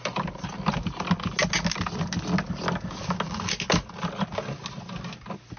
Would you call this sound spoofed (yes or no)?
no